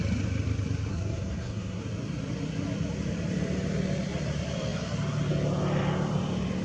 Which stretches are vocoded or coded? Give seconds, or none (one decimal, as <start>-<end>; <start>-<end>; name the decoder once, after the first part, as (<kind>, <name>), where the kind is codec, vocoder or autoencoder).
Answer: 0.9-1.8 (codec, SNAC)